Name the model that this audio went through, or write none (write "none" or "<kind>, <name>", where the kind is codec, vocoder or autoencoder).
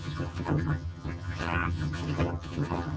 vocoder, HiFi-GAN